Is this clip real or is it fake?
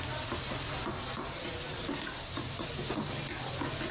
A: real